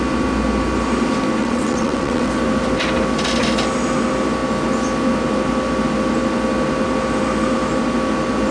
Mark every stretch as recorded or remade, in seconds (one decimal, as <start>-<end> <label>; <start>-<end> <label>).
0.0-1.4 recorded; 1.4-2.3 remade; 2.3-8.5 recorded